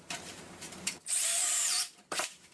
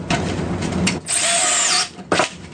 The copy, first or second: first